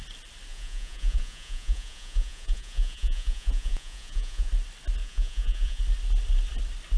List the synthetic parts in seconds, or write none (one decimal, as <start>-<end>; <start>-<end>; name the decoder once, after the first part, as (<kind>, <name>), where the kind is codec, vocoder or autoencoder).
0.5-4.5 (vocoder, Vocos); 5.0-5.8